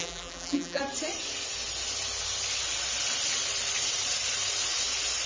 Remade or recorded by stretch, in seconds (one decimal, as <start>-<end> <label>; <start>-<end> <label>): 0.0-0.8 remade; 0.8-5.3 recorded